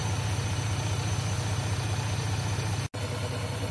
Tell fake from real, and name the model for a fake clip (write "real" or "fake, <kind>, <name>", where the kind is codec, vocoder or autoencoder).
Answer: real